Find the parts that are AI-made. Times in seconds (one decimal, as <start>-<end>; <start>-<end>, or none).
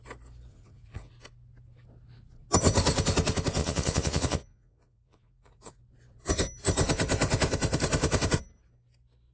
0.5-1.1; 3.6-5.8